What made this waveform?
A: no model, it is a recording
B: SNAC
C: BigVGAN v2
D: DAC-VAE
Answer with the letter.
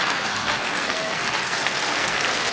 B